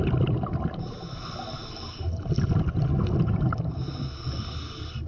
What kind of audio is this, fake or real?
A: real